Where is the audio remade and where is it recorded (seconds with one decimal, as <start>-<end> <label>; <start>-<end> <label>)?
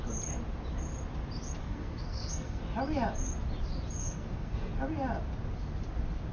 0.0-1.6 recorded; 1.6-2.6 remade; 2.6-4.0 recorded; 4.0-4.7 remade; 4.7-6.3 recorded